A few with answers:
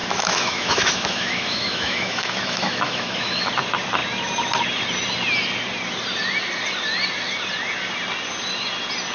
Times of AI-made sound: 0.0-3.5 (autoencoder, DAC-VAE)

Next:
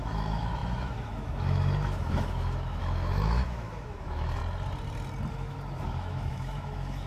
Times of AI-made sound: 0.0-4.4 (autoencoder, DAC-VAE); 5.3-7.1

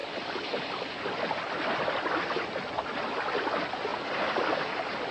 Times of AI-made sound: none

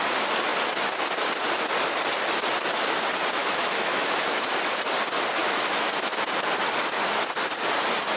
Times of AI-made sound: 3.4-4.6 (autoencoder, DAC-VAE); 5.4-5.9

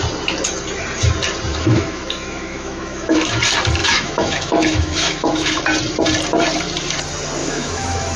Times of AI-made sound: 1.5-3.4 (autoencoder, DAC-VAE); 3.8-5.6; 7.4-8.2

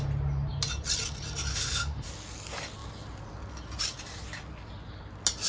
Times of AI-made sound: 1.5-2.1 (autoencoder, DAC-VAE)

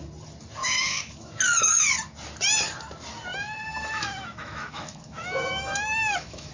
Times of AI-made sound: 0.6-1.3 (autoencoder, DAC-VAE); 3.3-6.5